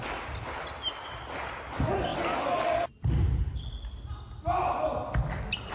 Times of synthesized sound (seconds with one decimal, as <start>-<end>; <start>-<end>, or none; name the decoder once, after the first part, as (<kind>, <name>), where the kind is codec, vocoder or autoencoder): none